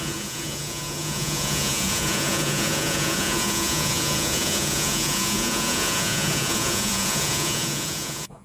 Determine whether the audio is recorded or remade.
remade